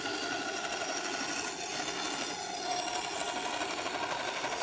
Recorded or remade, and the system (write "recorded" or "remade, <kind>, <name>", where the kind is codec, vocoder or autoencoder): recorded